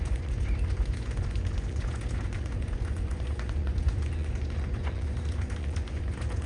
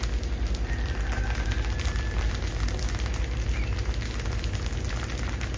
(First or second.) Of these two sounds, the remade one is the first